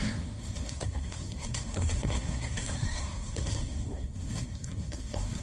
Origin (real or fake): fake